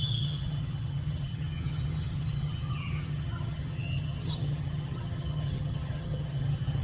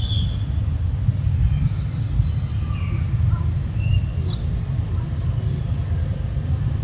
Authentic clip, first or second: second